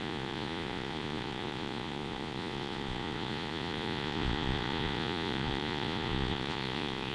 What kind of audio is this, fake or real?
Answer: fake